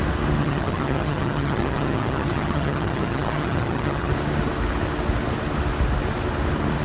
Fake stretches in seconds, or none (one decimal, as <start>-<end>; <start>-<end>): 0.4-4.1